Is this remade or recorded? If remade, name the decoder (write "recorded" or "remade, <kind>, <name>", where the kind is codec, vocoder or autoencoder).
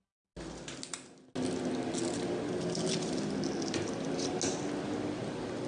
recorded